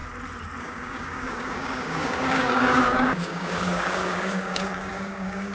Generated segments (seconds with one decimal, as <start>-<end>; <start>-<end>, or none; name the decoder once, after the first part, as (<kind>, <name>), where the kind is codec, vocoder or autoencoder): 0.6-5.5 (codec, DAC)